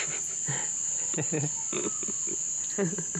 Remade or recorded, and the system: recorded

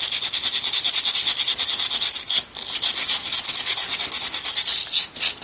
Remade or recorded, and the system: recorded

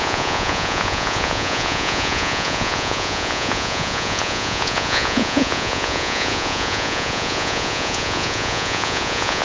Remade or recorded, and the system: remade, vocoder, Vocos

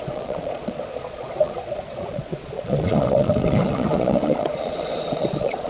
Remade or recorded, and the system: remade, vocoder, Vocos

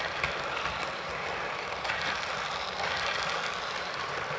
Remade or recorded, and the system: recorded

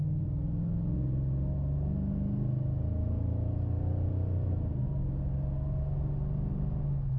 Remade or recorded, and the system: recorded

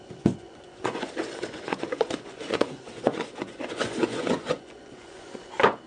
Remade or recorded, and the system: remade, vocoder, Vocos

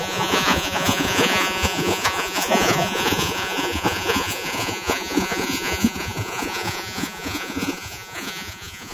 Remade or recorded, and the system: remade, vocoder, Vocos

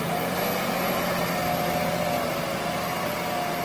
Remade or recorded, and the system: recorded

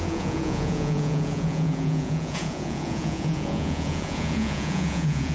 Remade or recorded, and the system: remade, vocoder, Vocos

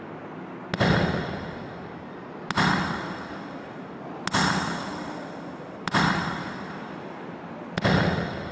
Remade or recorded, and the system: recorded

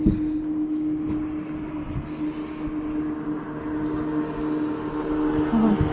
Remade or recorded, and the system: recorded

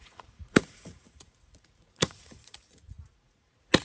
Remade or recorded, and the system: remade, vocoder, Vocos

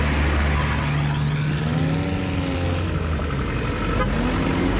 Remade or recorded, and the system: recorded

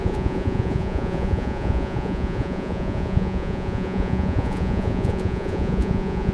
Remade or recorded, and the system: remade, vocoder, Vocos